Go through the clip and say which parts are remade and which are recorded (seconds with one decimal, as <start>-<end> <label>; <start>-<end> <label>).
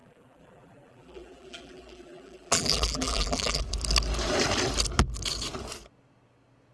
0.0-3.6 remade; 3.6-6.7 recorded